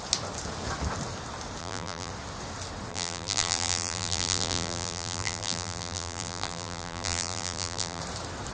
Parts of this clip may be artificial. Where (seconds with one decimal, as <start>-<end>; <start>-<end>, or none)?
1.6-2.1; 2.9-8.0